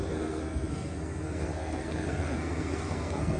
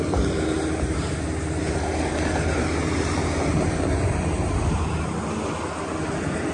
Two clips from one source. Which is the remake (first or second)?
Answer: first